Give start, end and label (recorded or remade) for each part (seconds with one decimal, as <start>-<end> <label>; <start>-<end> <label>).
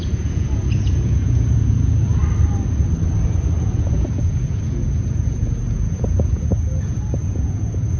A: 0.0-2.2 remade; 2.2-3.6 recorded; 3.6-8.0 remade